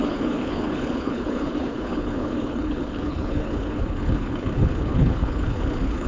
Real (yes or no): no